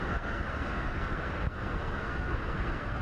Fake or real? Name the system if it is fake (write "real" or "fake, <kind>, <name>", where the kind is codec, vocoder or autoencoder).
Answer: fake, codec, SNAC